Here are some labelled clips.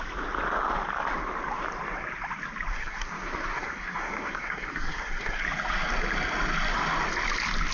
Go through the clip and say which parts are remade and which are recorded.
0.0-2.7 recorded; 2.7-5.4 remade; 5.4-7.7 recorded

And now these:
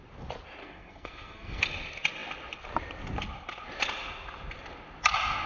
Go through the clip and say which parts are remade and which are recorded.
0.0-0.6 recorded; 0.6-1.6 remade; 1.6-5.5 recorded

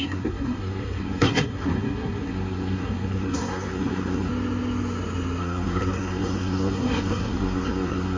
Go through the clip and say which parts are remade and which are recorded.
0.0-4.3 remade; 4.3-5.4 recorded; 5.4-8.2 remade

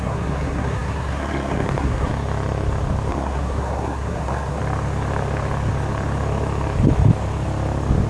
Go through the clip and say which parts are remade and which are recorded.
0.0-2.1 remade; 2.1-3.1 recorded; 3.1-4.6 remade; 4.6-8.1 recorded